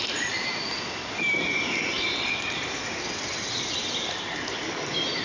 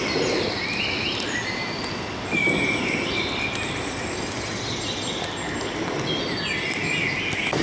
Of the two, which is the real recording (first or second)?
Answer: second